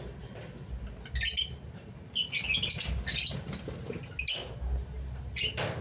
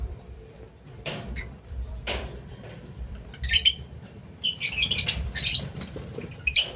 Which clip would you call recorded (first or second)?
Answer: first